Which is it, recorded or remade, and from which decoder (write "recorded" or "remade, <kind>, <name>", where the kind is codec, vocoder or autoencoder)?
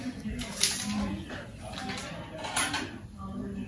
recorded